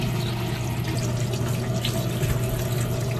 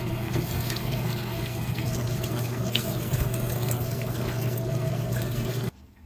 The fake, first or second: second